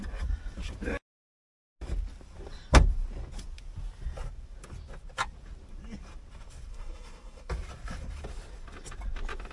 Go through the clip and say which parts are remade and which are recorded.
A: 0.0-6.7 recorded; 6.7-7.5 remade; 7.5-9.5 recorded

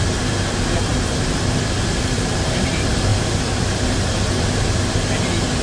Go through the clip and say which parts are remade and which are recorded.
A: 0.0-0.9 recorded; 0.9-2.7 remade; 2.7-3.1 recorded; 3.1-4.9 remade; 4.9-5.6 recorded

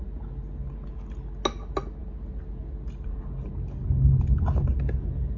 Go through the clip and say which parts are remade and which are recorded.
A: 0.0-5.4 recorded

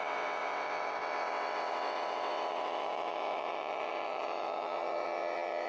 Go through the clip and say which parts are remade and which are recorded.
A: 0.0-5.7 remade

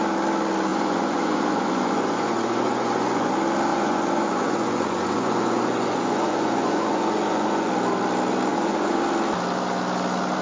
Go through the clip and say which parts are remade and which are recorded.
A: 0.0-0.7 recorded; 0.7-3.3 remade; 3.3-3.7 recorded; 3.7-7.7 remade; 7.7-8.5 recorded; 8.5-9.0 remade; 9.0-10.4 recorded